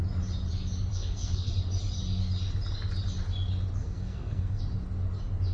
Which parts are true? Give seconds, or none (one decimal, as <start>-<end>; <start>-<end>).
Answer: 0.0-0.9; 1.5-3.8; 4.6-5.5